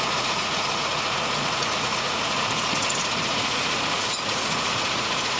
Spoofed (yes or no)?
yes